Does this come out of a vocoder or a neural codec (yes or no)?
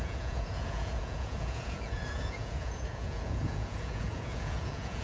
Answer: yes